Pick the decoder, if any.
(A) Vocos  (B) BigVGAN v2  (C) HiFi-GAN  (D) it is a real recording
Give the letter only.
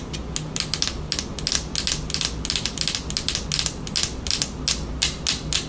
D